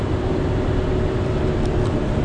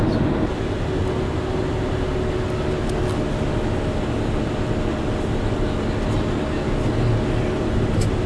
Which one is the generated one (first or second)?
first